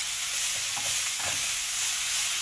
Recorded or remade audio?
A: remade